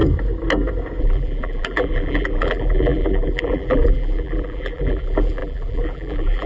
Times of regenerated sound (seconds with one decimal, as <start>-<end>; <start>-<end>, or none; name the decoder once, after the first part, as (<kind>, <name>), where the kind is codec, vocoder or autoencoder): 1.0-6.5 (vocoder, BigVGAN v2)